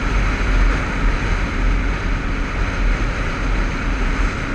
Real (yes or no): yes